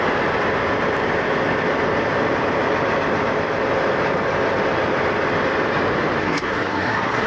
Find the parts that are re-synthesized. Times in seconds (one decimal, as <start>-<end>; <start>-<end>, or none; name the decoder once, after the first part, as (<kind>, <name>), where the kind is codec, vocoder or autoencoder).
6.2-7.3 (codec, SNAC)